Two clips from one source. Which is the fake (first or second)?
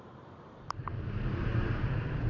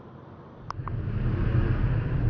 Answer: first